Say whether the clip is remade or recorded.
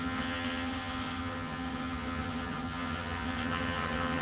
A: remade